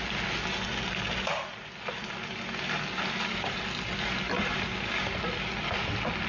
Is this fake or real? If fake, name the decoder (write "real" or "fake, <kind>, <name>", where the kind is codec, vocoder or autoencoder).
real